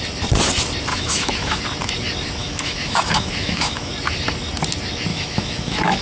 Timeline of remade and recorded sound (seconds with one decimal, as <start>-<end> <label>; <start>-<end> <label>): 0.0-0.9 recorded; 0.9-1.6 remade; 1.6-2.4 recorded; 2.4-3.9 remade; 3.9-5.1 recorded; 5.1-6.0 remade